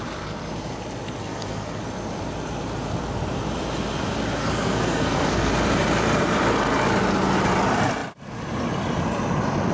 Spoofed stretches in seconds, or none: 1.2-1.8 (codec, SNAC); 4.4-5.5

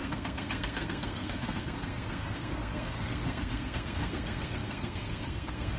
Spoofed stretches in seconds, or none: 0.0-5.8 (codec, SNAC)

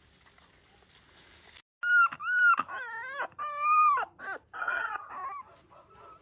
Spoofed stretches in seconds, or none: 4.6-5.1 (vocoder, HiFi-GAN)

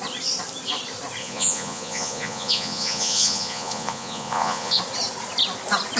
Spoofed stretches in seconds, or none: 1.2-4.8 (vocoder, Vocos)

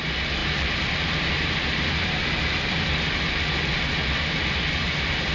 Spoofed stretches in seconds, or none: 0.4-3.6 (vocoder, BigVGAN v2)